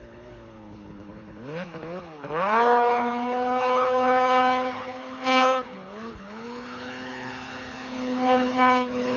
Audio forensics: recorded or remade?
remade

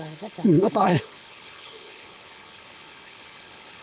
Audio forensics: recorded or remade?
remade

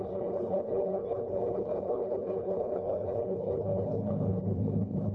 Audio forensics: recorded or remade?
remade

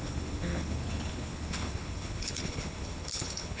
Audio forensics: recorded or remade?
remade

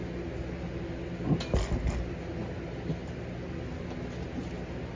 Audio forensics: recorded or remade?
recorded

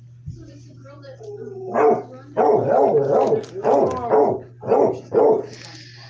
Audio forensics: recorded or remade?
recorded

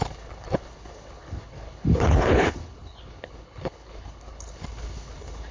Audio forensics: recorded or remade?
remade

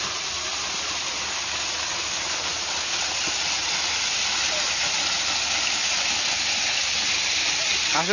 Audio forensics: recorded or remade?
recorded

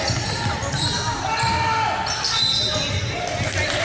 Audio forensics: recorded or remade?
recorded